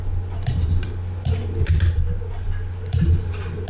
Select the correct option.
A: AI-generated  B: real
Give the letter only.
B